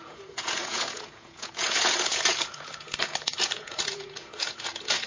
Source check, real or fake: fake